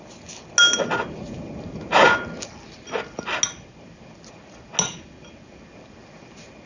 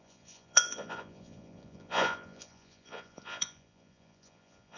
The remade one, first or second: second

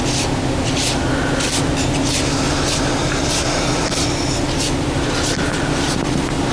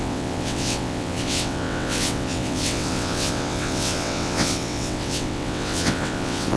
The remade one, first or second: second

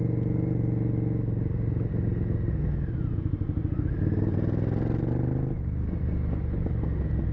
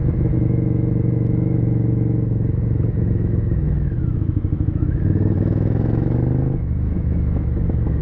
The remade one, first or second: second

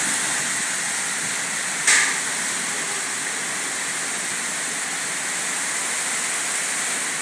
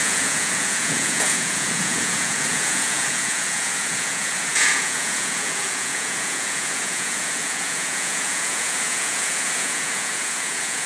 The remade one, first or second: second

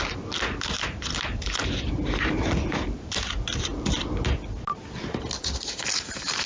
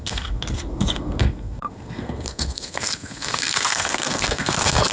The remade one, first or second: second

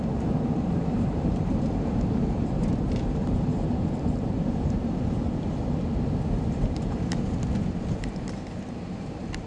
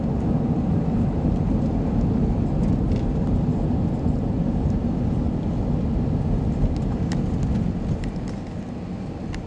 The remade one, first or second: first